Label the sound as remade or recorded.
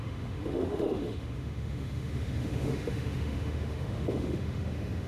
remade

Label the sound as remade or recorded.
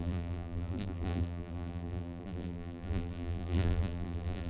remade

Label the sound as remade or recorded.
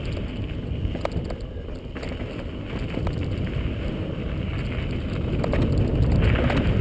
recorded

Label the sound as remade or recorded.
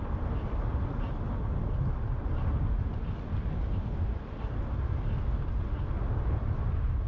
recorded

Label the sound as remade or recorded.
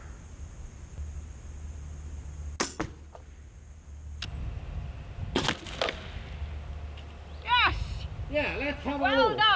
recorded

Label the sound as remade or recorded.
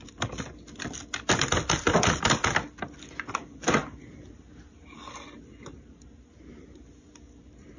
recorded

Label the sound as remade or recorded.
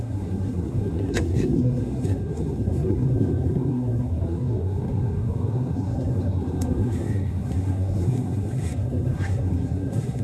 remade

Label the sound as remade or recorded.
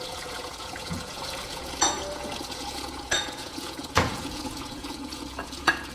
remade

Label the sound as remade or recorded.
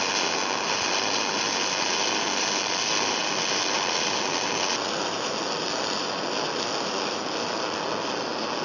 recorded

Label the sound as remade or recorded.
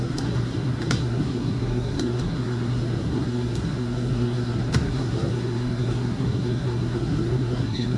remade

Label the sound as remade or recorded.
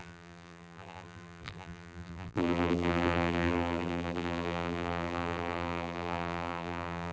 remade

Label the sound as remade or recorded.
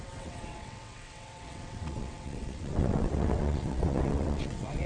remade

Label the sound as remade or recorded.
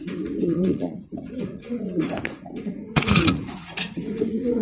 remade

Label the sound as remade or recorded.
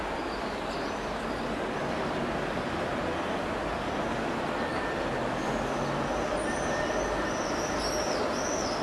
recorded